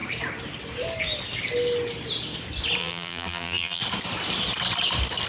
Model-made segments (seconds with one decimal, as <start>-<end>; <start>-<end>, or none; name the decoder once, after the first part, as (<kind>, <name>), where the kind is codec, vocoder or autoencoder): 2.8-3.8 (vocoder, BigVGAN v2)